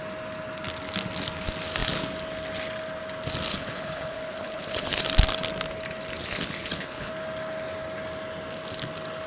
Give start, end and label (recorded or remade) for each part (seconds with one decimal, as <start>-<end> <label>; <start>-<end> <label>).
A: 0.0-3.5 recorded; 3.5-5.0 remade; 5.0-6.2 recorded; 6.2-7.1 remade; 7.1-9.3 recorded

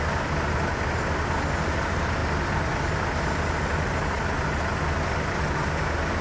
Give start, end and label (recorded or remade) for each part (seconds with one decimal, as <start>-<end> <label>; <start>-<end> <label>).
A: 0.0-6.2 recorded

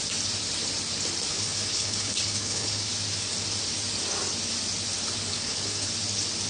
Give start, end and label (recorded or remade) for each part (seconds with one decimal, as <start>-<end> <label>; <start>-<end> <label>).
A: 0.0-1.3 recorded; 1.3-2.9 remade; 2.9-5.3 recorded; 5.3-5.9 remade; 5.9-6.5 recorded

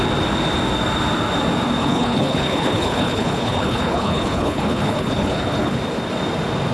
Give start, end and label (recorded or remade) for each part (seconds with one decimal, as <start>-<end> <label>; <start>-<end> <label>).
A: 0.0-1.8 recorded; 1.8-5.8 remade; 5.8-6.7 recorded

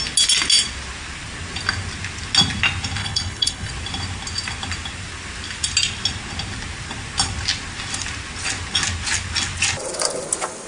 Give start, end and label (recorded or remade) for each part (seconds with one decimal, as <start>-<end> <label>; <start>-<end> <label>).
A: 0.0-3.0 recorded; 3.0-3.7 remade; 3.7-10.7 recorded